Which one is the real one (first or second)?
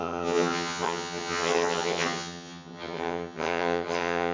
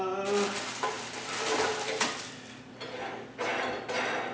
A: second